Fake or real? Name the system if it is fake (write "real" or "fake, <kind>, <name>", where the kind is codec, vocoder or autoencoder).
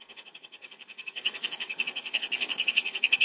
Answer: fake, codec, SNAC